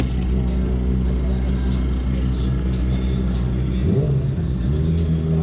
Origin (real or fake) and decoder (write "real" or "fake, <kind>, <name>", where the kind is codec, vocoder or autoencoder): real